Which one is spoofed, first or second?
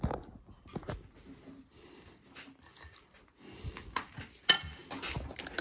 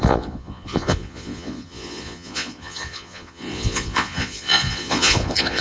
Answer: second